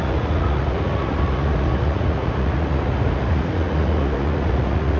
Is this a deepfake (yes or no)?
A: yes